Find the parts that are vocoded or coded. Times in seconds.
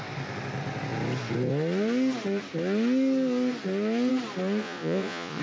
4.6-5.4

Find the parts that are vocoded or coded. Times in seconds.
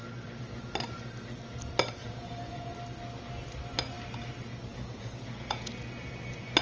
2.0-2.7; 4.7-5.7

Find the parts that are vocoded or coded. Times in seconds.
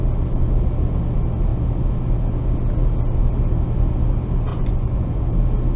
4.5-5.3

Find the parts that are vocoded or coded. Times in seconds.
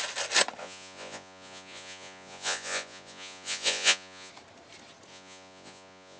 0.6-4.3; 5.1-6.2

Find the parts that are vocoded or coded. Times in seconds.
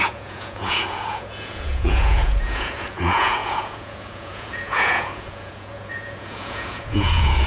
0.0-7.5